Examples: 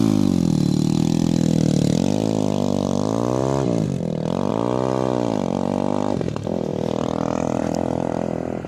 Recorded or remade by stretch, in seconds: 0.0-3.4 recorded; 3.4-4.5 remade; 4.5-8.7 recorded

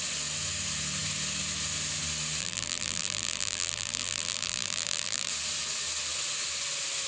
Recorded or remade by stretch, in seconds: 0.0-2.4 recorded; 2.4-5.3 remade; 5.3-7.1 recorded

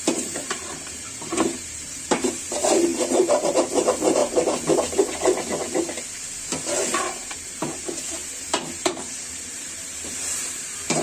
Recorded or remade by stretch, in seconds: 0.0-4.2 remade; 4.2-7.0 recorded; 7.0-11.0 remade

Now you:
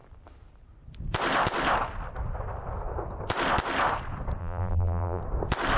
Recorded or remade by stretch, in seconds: 0.0-4.4 recorded; 4.4-5.2 remade; 5.2-5.8 recorded

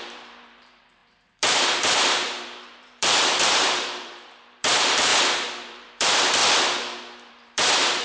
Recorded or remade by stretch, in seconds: 0.0-5.1 remade; 5.1-5.7 recorded; 5.7-6.4 remade; 6.4-7.3 recorded; 7.3-8.0 remade